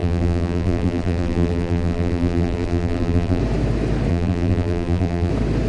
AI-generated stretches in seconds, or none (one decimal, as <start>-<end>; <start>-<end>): 0.0-3.4; 4.1-5.3